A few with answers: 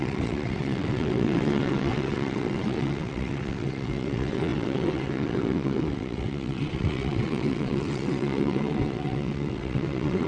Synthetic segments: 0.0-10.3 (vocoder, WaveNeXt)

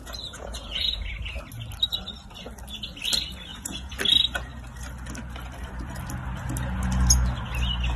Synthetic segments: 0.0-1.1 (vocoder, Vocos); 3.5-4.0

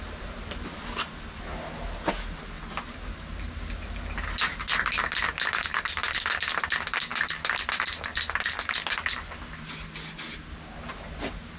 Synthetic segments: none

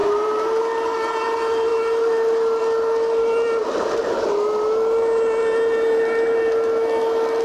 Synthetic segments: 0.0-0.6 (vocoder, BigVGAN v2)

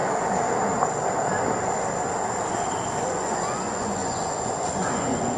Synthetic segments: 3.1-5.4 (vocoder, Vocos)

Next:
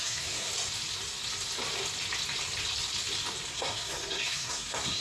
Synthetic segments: 0.0-0.5 (codec, SNAC); 3.5-5.0

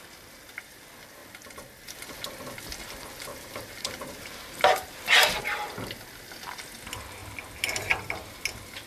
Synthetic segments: 3.3-5.4 (vocoder, BigVGAN v2)